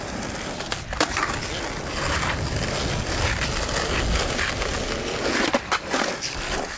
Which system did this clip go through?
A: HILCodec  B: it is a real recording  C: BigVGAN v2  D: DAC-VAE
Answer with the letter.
B